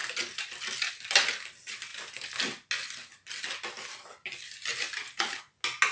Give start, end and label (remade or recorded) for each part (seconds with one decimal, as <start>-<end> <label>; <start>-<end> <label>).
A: 0.0-5.9 recorded